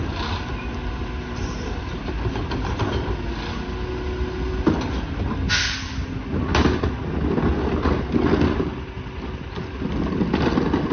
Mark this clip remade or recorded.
recorded